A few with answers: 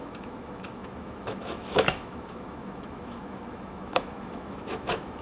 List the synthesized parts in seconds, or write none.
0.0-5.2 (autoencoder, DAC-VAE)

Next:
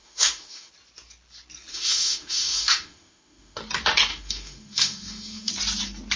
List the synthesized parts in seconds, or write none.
0.0-0.7 (autoencoder, DAC-VAE); 1.7-3.6; 4.1-5.5

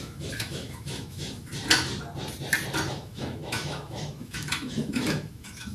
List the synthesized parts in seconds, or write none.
0.0-1.5 (autoencoder, DAC-VAE); 2.9-5.7

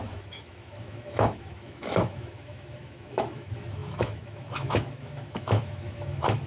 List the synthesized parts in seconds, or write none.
0.0-6.5 (autoencoder, DAC-VAE)

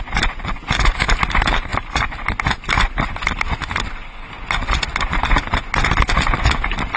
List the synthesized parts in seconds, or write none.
none

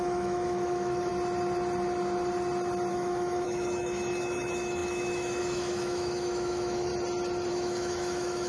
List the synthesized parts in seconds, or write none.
0.0-1.1 (autoencoder, DAC-VAE); 2.9-6.9; 7.5-8.5

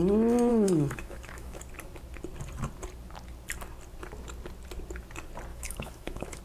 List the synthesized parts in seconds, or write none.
0.5-1.6 (autoencoder, DAC-VAE); 5.5-6.4

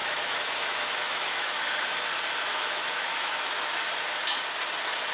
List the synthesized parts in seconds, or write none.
0.0-2.1 (autoencoder, DAC-VAE); 2.5-3.7